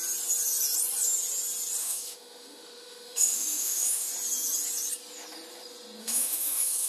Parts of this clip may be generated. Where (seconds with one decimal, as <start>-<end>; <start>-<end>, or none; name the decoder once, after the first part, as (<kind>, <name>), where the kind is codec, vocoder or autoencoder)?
1.8-4.1 (autoencoder, DAC-VAE); 6.0-6.9